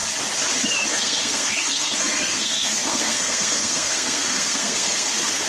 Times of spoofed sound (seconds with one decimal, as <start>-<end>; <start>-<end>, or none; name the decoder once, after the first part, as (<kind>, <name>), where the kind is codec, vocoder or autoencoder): 0.9-5.5 (codec, SNAC)